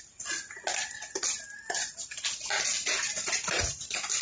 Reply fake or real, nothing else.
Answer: real